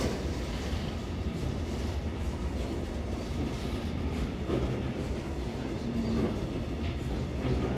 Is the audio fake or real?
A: real